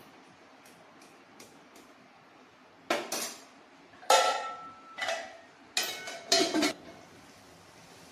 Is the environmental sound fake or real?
real